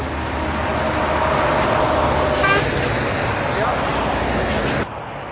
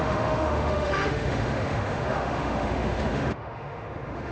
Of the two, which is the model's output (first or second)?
second